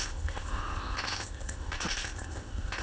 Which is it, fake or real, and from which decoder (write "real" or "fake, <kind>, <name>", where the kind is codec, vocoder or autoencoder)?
fake, codec, ZipCodec